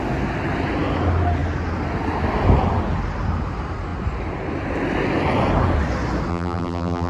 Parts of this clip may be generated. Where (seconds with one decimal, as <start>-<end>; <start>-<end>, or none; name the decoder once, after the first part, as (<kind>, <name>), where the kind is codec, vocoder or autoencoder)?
6.3-7.1 (vocoder, BigVGAN v2)